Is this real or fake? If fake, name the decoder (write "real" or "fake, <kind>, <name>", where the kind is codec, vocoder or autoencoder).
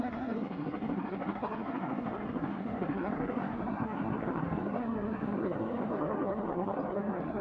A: fake, codec, SNAC